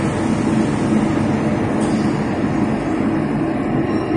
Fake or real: real